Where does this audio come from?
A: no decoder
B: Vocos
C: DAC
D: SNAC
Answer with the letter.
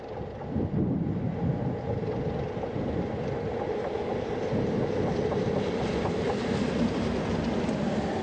A